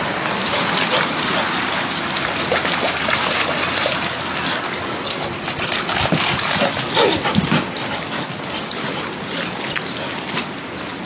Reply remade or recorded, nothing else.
recorded